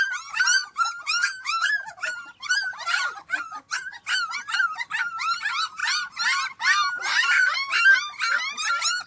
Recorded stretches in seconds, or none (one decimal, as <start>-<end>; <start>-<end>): 0.0-9.1